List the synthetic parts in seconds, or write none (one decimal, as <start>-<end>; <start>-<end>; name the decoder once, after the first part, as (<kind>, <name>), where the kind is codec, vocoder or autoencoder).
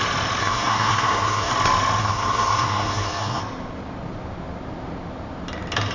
0.4-1.5 (codec, SNAC); 2.0-3.4